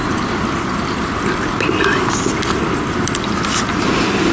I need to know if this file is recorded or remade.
recorded